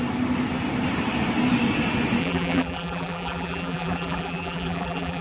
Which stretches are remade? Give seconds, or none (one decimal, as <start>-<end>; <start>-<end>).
2.2-5.2